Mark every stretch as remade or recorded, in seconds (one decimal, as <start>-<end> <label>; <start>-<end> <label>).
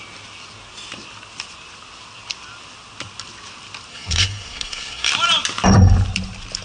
0.0-3.9 recorded; 3.9-5.1 remade; 5.1-6.6 recorded